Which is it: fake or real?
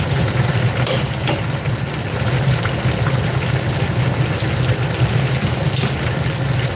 real